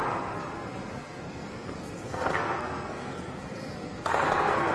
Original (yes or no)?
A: no